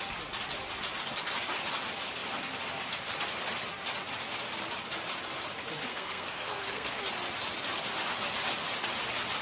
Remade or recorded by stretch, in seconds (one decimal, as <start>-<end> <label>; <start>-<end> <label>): 0.0-5.9 recorded; 5.9-7.0 remade; 7.0-9.4 recorded